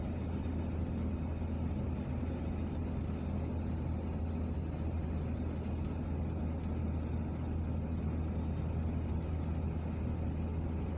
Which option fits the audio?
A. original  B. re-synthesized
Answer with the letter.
A